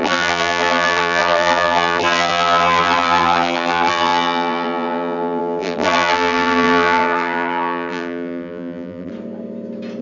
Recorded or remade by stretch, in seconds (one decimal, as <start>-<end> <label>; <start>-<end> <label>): 0.0-9.1 remade; 9.1-10.0 recorded

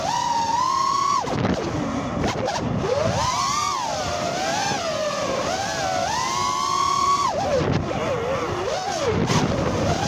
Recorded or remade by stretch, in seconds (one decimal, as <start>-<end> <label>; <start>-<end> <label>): 0.0-10.1 recorded